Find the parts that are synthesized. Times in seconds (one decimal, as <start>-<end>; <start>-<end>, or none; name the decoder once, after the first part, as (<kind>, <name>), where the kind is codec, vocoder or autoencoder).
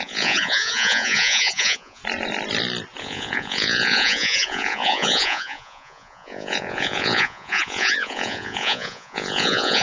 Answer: 0.0-2.0 (vocoder, Vocos); 3.0-9.8